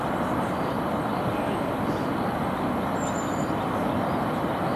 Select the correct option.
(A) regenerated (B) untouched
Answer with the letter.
B